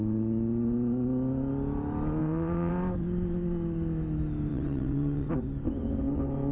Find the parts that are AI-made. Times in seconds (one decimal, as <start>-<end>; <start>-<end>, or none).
2.2-2.7; 4.5-5.3

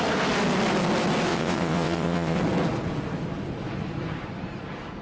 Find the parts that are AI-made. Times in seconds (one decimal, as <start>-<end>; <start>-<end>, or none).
1.3-2.4

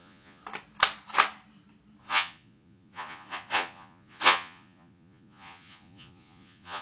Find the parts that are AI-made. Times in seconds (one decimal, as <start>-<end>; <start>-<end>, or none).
0.0-0.4; 2.0-6.8

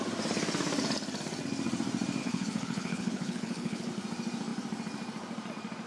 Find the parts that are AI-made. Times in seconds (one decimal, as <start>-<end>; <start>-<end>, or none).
2.2-3.9

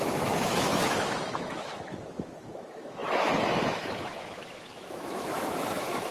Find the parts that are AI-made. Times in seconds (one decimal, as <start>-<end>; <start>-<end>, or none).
0.0-6.1

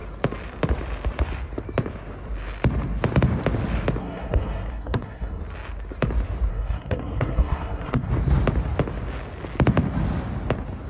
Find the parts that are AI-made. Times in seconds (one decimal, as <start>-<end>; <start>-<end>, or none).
4.0-5.4; 6.5-8.1

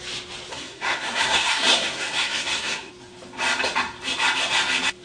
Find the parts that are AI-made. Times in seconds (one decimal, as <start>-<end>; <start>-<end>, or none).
0.5-2.9

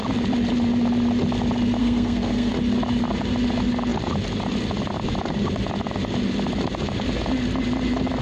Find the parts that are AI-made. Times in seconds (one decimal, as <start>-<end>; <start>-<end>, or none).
1.8-2.5